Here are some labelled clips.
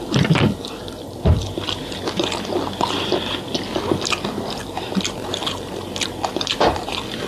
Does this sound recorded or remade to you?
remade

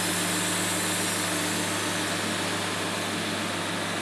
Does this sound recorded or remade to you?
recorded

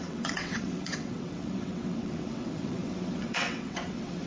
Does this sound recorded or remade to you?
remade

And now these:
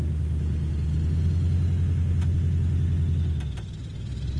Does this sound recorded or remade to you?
recorded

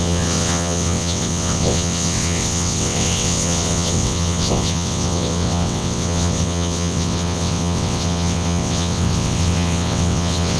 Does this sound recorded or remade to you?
remade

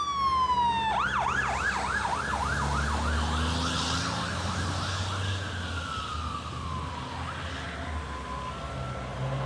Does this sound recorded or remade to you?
recorded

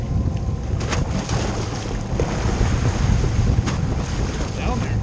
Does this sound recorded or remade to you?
recorded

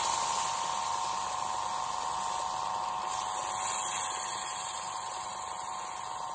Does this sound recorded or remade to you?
recorded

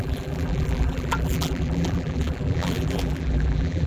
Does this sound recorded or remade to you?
remade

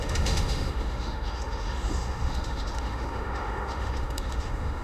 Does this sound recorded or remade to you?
remade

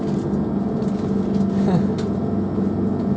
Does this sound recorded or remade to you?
recorded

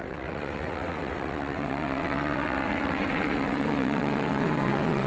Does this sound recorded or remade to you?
remade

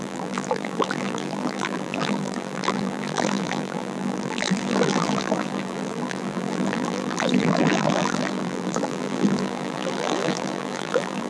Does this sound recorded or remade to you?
remade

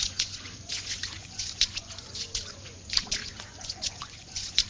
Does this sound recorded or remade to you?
remade